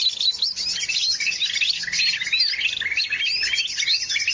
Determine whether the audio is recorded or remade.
recorded